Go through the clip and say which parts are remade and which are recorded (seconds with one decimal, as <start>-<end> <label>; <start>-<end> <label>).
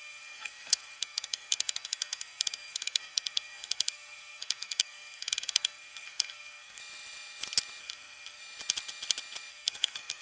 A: 0.0-6.8 remade; 6.8-7.8 recorded; 7.8-8.4 remade; 8.4-9.5 recorded; 9.5-10.2 remade